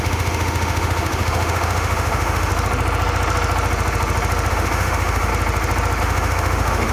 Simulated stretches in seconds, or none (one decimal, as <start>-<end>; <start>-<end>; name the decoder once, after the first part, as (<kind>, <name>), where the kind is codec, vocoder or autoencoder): 0.0-2.5 (autoencoder, DAC-VAE); 4.5-5.3; 6.0-6.9